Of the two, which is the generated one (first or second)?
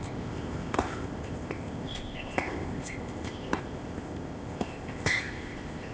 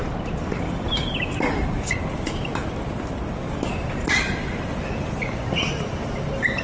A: first